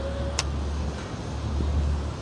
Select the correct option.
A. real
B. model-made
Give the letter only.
A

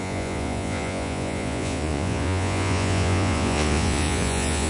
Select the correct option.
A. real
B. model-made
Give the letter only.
B